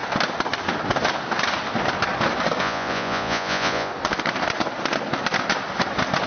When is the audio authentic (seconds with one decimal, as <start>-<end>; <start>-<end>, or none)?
0.0-2.6; 3.9-6.3